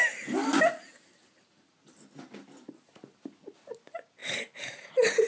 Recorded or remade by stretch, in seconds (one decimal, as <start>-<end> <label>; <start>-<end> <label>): 0.0-5.3 recorded